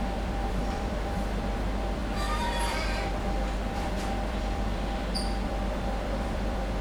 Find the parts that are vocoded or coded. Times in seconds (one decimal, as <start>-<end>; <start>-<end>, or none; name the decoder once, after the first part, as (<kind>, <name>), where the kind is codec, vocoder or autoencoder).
0.0-6.8 (vocoder, BigVGAN v2)